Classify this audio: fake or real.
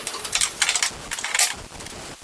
real